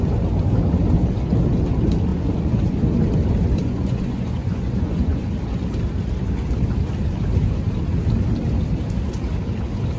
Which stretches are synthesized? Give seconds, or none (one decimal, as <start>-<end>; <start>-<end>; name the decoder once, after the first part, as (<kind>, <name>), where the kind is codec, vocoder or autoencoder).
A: 2.1-2.8 (vocoder, Vocos); 3.6-5.3